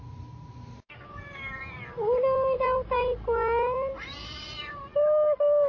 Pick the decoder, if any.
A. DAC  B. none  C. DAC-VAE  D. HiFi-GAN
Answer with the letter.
B